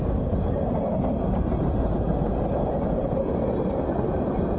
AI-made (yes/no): no